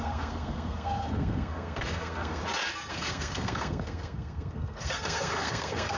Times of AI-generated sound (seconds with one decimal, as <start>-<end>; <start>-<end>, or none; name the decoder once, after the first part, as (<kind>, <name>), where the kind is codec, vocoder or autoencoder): 0.0-2.4 (codec, SNAC); 2.9-6.0